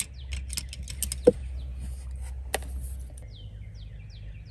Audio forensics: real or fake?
real